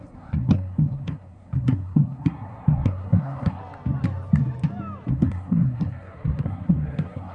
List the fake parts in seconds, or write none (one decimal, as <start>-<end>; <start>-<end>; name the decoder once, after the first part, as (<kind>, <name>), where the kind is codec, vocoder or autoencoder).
0.0-3.6 (codec, SNAC); 5.1-7.3